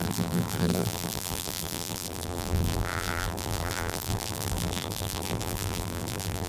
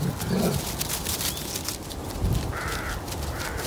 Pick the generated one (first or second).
first